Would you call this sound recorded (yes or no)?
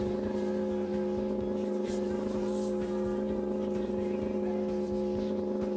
yes